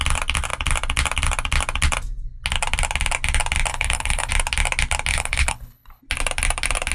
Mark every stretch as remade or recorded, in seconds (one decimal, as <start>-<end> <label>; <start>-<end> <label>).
0.0-3.7 recorded; 3.7-4.3 remade; 4.3-5.1 recorded; 5.1-6.0 remade; 6.0-6.9 recorded